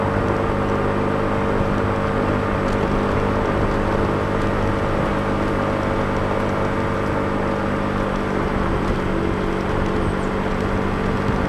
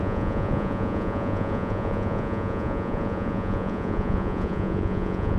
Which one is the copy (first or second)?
second